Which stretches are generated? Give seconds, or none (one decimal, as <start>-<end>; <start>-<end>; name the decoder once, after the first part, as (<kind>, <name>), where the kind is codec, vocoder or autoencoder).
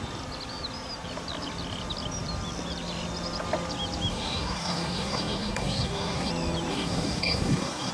4.1-6.3 (codec, SNAC); 6.7-7.9